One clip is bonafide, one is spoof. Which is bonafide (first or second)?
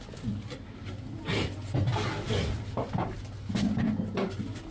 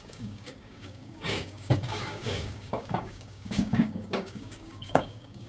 first